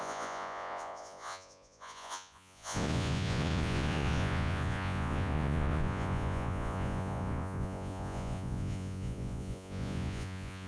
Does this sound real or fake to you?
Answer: fake